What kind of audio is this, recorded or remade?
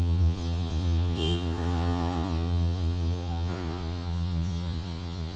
remade